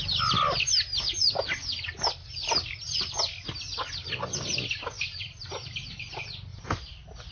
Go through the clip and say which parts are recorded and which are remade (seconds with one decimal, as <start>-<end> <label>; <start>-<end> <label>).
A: 0.0-2.2 recorded; 2.2-4.1 remade; 4.1-6.5 recorded; 6.5-7.3 remade